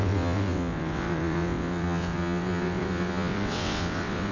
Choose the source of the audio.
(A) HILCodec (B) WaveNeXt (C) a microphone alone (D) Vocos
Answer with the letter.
B